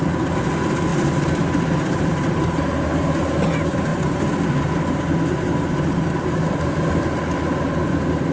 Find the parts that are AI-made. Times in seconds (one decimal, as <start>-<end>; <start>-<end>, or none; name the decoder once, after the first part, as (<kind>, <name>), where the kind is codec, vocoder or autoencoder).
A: none